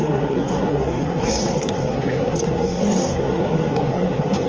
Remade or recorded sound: remade